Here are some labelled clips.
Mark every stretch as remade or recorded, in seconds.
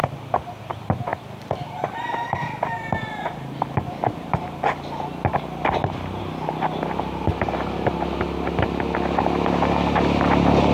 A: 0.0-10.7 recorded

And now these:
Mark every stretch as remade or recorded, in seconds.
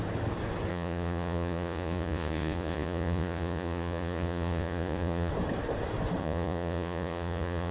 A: 0.0-0.7 recorded; 0.7-5.3 remade; 5.3-6.2 recorded; 6.2-7.7 remade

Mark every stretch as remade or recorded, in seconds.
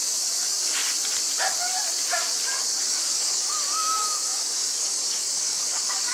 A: 0.0-0.8 remade; 0.8-2.6 recorded; 2.6-6.1 remade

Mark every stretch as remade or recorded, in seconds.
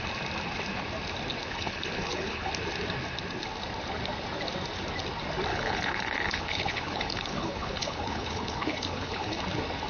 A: 0.0-1.4 recorded; 1.4-2.5 remade; 2.5-5.5 recorded; 5.5-9.4 remade; 9.4-9.9 recorded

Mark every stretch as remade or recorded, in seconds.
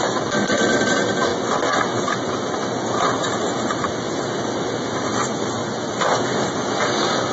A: 0.0-1.3 remade; 1.3-3.4 recorded; 3.4-5.6 remade; 5.6-6.2 recorded; 6.2-7.3 remade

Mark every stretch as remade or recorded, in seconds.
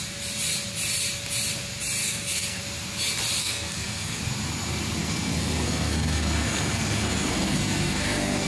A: 0.0-2.0 recorded; 2.0-2.6 remade; 2.6-3.4 recorded; 3.4-4.2 remade; 4.2-5.0 recorded; 5.0-8.5 remade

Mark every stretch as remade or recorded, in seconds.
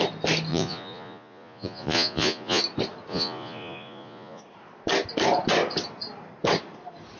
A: 0.0-0.5 recorded; 0.5-2.6 remade; 2.6-3.1 recorded; 3.1-4.4 remade; 4.4-7.2 recorded